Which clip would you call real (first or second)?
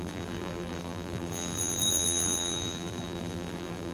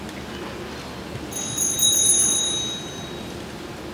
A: second